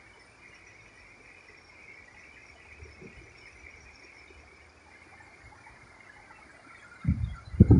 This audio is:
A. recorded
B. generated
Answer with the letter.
A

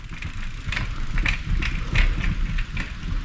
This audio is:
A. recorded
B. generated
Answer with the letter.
A